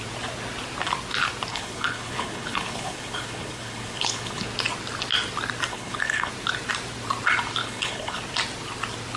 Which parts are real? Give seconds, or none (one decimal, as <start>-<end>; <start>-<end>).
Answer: 0.0-1.5; 4.5-5.7; 6.3-7.6; 8.2-9.2